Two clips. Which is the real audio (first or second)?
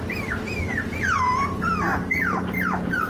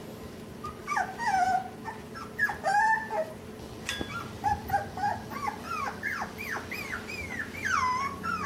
second